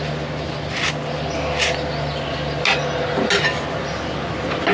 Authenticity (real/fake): real